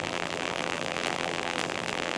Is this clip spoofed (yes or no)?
yes